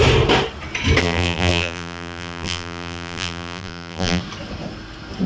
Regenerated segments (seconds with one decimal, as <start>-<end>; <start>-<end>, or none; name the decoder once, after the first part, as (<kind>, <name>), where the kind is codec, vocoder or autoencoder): 1.0-4.2 (vocoder, BigVGAN v2)